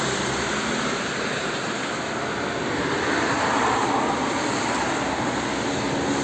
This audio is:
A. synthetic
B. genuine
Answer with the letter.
B